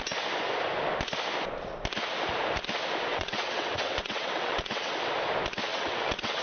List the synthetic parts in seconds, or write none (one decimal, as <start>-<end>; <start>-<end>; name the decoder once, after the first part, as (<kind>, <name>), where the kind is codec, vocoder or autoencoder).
3.1-4.9 (vocoder, WaveNeXt); 5.7-6.4